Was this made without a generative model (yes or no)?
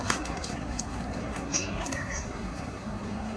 no